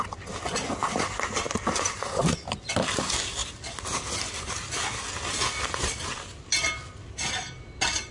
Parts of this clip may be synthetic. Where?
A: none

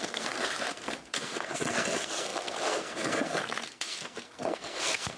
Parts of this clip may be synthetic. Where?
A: 0.0-5.2 (codec, SNAC)